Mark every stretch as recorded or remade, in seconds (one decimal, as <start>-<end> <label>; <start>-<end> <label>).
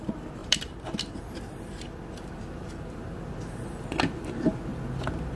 0.0-4.7 remade; 4.7-5.4 recorded